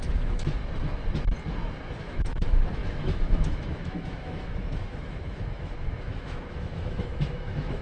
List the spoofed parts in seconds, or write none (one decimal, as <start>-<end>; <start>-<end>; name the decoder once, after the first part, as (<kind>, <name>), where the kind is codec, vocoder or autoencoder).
0.0-0.6 (autoencoder, DAC-VAE); 2.0-7.8